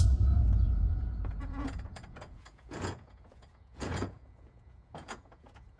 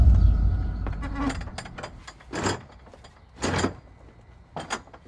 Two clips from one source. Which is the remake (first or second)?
first